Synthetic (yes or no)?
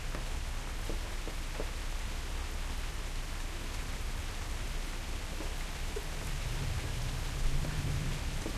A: no